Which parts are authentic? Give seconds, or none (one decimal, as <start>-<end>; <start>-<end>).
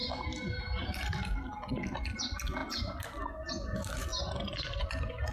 0.0-5.3